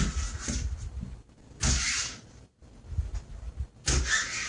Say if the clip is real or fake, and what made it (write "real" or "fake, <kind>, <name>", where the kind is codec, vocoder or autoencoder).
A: real